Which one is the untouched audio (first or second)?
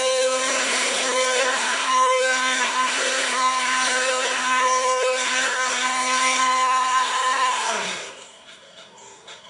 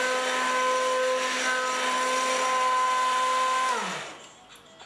second